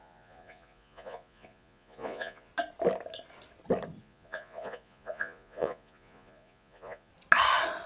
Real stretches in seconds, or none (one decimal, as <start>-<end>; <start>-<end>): 2.5-4.0; 7.1-7.9